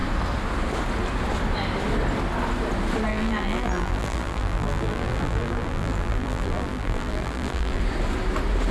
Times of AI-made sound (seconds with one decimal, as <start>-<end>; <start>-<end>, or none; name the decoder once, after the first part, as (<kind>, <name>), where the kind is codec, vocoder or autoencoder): 3.1-7.8 (vocoder, BigVGAN v2)

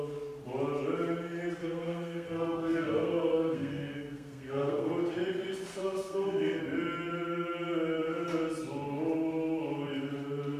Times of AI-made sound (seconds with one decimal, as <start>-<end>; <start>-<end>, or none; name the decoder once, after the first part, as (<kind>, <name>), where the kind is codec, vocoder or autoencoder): 1.6-4.9 (codec, SNAC); 5.7-6.6

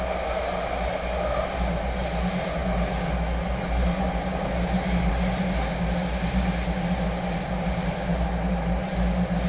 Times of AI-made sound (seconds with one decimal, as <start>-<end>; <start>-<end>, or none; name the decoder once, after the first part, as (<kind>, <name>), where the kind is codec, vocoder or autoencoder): none

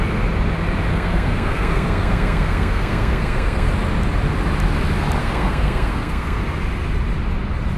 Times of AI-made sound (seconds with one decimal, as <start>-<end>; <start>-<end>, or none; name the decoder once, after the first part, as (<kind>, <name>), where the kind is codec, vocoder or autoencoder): 0.9-3.7 (codec, SNAC); 5.2-6.4

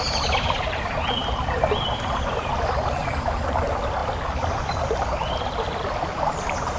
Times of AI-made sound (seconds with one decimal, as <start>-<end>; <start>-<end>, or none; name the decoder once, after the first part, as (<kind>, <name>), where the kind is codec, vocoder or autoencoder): 0.0-6.8 (vocoder, BigVGAN v2)

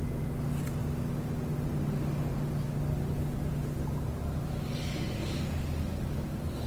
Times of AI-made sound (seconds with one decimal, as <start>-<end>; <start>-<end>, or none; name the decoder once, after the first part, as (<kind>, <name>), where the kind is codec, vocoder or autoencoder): 2.3-3.5 (vocoder, BigVGAN v2)

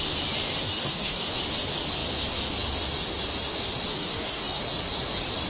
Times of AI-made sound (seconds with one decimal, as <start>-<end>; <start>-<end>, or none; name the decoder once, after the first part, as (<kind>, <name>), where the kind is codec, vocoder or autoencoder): 0.6-1.3 (codec, DAC); 3.9-4.6